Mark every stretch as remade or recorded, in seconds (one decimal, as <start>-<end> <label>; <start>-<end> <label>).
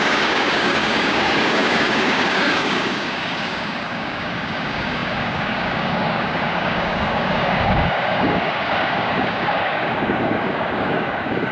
0.0-11.5 remade